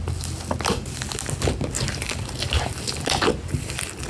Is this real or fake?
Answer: real